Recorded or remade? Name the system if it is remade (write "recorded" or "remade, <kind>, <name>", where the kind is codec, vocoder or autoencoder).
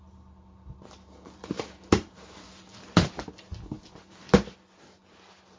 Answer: recorded